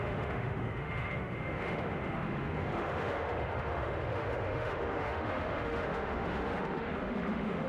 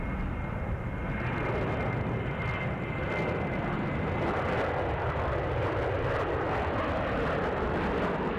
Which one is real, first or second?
second